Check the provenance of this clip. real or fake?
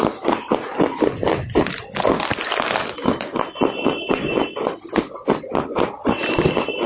real